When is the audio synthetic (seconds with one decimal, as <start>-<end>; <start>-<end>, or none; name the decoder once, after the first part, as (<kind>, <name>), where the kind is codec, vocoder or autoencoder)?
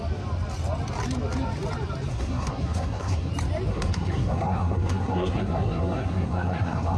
2.1-3.3 (codec, SNAC); 3.7-7.0